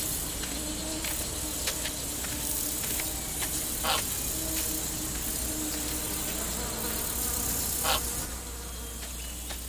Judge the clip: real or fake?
real